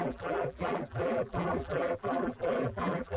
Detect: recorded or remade remade